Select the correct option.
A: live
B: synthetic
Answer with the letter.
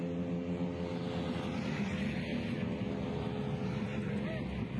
A